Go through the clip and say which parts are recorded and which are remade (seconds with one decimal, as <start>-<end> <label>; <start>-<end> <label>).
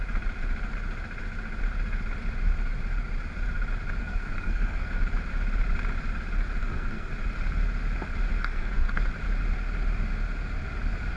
0.0-4.0 recorded; 4.0-5.0 remade; 5.0-6.6 recorded; 6.6-7.1 remade; 7.1-8.4 recorded; 8.4-9.0 remade; 9.0-11.2 recorded